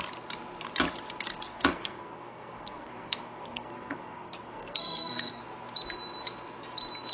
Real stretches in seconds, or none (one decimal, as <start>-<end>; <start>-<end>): 0.0-1.5; 5.4-7.1